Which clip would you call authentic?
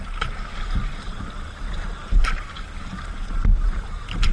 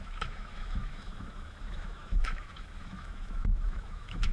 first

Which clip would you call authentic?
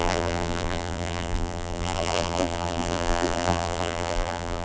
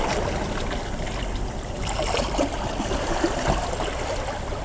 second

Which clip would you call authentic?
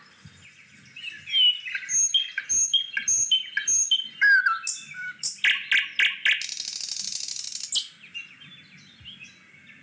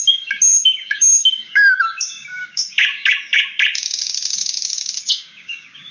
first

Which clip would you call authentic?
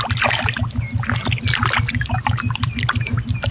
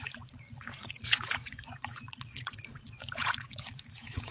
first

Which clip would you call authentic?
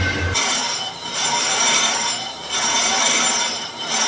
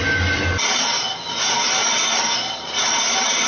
second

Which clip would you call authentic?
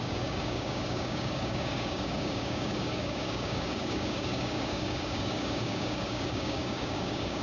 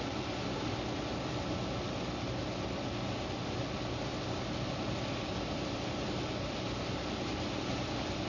second